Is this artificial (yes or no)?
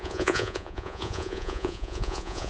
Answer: yes